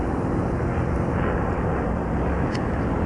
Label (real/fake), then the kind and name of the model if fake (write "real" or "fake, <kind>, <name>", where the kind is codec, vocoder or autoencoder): real